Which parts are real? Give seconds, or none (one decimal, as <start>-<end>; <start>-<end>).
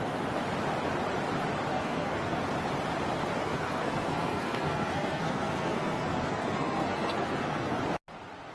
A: 0.0-1.7; 2.4-3.4; 7.8-8.5